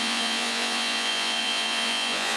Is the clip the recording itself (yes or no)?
no